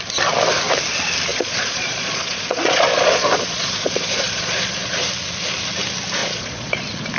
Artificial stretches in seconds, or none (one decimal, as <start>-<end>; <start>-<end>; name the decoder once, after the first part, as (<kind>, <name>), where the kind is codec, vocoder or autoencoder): 1.3-4.9 (vocoder, Vocos); 6.2-6.8